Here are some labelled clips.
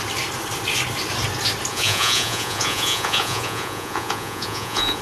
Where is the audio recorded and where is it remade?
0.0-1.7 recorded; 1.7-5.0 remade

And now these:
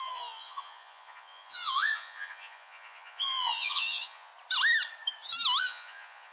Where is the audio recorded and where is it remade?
0.0-4.3 remade; 4.3-5.6 recorded; 5.6-6.3 remade

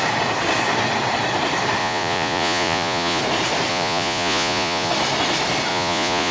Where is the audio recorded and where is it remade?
0.0-1.8 recorded; 1.8-3.2 remade; 3.2-3.7 recorded; 3.7-4.9 remade; 4.9-5.7 recorded; 5.7-6.3 remade

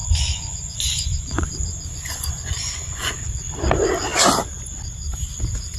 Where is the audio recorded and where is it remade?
0.0-3.2 remade; 3.2-5.8 recorded

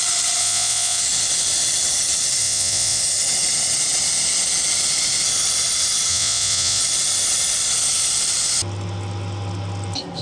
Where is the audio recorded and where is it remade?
0.0-0.4 recorded; 0.4-1.0 remade; 1.0-2.4 recorded; 2.4-3.0 remade; 3.0-6.1 recorded; 6.1-6.8 remade; 6.8-10.2 recorded

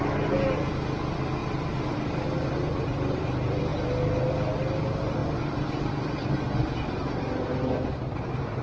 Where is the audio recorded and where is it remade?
0.0-8.6 recorded

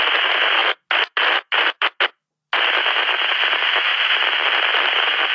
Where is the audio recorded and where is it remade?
0.0-5.3 recorded